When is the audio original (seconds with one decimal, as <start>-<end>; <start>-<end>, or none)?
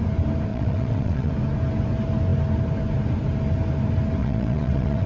0.0-0.5; 1.3-4.2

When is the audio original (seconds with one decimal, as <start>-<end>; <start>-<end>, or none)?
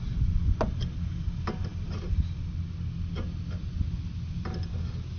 0.0-5.2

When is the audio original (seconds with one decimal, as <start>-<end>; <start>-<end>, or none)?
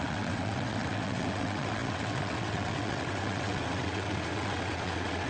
none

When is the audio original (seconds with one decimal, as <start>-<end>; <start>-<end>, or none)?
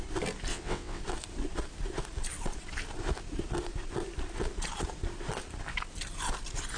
0.0-0.5; 1.0-6.8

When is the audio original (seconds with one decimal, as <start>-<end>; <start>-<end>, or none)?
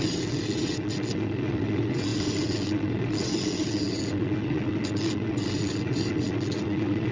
none